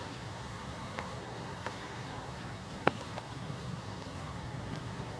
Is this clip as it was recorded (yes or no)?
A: no